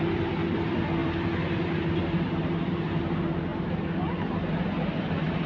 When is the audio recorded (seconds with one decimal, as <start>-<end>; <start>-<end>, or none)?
3.5-4.9